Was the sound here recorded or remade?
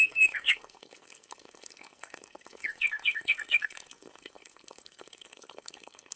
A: remade